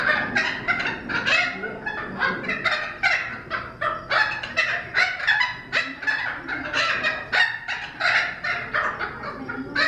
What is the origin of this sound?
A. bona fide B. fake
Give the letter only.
A